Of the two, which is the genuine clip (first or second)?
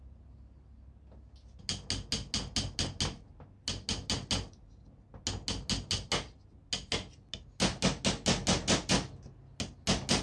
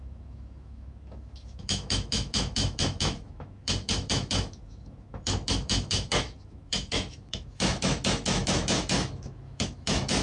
first